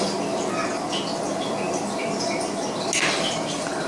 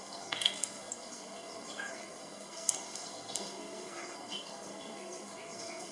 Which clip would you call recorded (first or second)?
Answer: first